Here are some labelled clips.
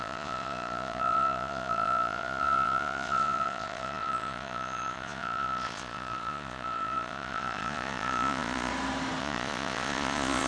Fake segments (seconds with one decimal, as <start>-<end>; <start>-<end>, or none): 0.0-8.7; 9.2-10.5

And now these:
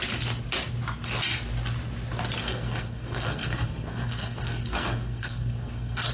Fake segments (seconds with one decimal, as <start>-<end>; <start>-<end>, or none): 2.4-6.1

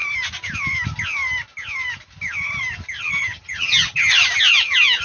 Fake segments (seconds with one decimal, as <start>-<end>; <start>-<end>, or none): 3.0-4.2